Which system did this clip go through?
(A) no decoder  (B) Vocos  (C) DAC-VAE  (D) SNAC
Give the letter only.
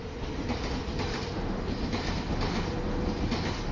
A